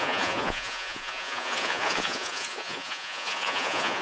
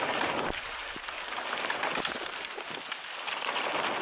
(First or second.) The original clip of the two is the second